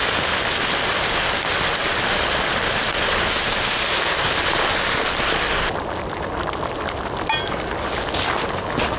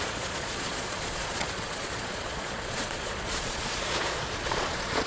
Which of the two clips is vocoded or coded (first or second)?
second